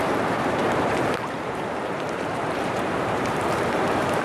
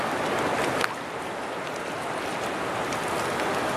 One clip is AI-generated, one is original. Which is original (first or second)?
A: second